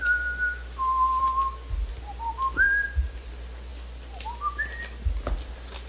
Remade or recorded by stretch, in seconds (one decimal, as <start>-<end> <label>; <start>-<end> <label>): 0.0-5.9 recorded